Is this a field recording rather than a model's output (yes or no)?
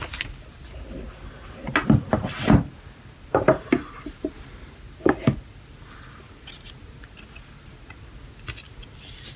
yes